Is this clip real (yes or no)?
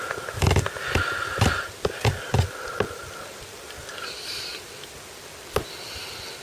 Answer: yes